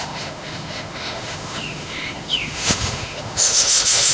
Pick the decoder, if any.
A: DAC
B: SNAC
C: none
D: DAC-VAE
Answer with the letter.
D